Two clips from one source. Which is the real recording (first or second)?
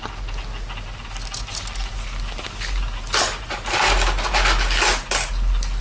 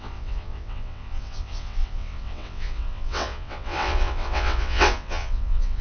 first